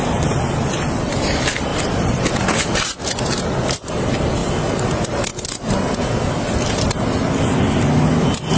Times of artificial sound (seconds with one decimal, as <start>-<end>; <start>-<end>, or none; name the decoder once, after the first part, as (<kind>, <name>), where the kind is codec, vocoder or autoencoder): 0.6-4.4 (vocoder, BigVGAN v2)